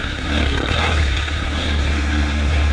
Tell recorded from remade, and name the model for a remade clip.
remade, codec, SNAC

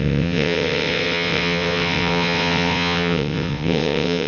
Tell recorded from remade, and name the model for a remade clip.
remade, vocoder, WaveNeXt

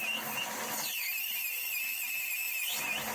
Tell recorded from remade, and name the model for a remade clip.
recorded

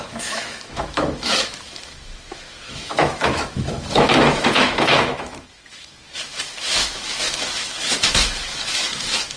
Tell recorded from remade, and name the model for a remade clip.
remade, autoencoder, DAC-VAE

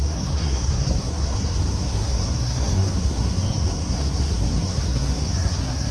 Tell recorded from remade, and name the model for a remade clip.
remade, codec, SNAC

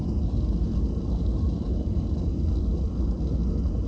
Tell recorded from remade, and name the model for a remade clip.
recorded